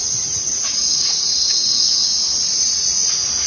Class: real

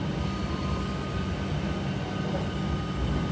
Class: real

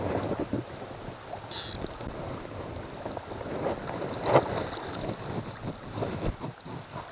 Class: real